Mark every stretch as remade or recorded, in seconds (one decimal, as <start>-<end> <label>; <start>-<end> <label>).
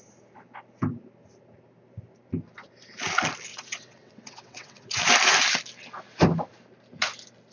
0.0-3.5 recorded; 3.5-5.0 remade; 5.0-7.5 recorded